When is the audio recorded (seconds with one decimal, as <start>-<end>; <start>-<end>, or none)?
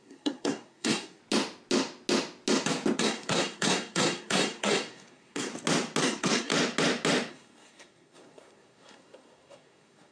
1.2-3.0; 5.5-6.0; 6.5-7.3